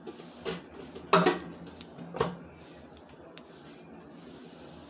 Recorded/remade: recorded